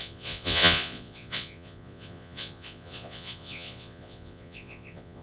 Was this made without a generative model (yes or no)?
no